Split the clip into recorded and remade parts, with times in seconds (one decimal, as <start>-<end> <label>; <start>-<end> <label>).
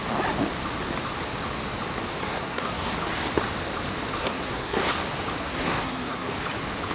0.0-2.2 recorded; 2.2-2.9 remade; 2.9-4.2 recorded; 4.2-4.8 remade; 4.8-5.4 recorded; 5.4-6.3 remade; 6.3-6.9 recorded